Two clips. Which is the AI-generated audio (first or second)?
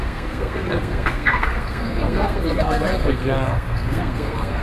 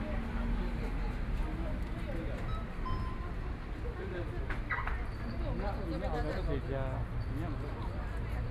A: first